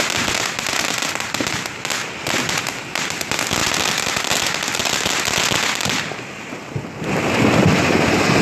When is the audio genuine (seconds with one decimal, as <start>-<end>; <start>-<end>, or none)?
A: 0.0-8.4